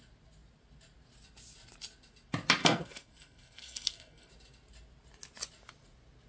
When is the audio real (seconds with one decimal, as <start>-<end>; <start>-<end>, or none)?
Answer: 0.0-2.6; 4.3-6.3